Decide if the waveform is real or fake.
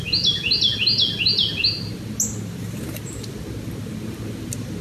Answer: real